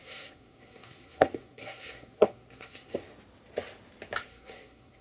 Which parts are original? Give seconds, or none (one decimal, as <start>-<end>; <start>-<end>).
3.0-4.2